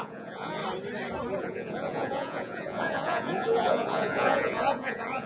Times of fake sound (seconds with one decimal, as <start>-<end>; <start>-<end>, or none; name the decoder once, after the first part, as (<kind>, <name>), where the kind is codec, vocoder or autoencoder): 0.0-0.6 (vocoder, Vocos); 1.4-5.3